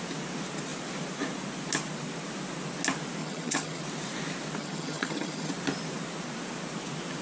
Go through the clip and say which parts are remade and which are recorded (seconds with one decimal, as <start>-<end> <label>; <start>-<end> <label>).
0.0-3.2 recorded; 3.2-3.8 remade; 3.8-4.6 recorded; 4.6-5.5 remade; 5.5-7.2 recorded